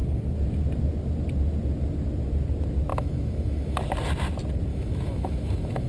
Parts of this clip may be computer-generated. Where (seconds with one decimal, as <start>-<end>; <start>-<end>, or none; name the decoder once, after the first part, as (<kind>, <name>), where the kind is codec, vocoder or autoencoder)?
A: 2.9-3.8 (autoencoder, DAC-VAE); 4.7-5.9